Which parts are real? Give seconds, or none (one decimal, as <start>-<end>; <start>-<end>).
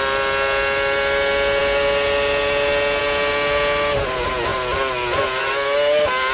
0.0-6.3